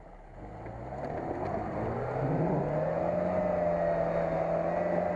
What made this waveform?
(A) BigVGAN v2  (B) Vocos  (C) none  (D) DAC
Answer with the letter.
C